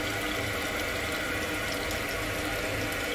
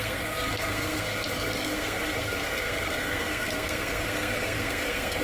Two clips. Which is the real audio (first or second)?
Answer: first